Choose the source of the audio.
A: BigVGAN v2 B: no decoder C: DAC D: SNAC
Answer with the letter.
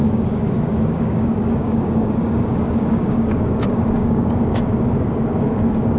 C